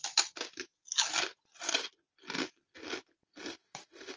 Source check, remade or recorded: recorded